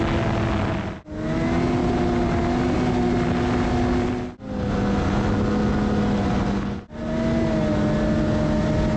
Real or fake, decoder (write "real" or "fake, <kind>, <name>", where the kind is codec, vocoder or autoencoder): real